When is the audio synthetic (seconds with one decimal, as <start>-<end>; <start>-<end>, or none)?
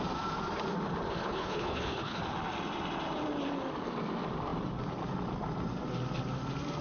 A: 1.2-2.2